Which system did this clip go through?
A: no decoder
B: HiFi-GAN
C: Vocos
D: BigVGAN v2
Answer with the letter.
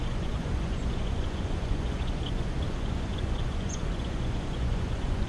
C